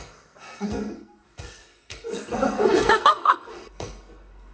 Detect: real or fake fake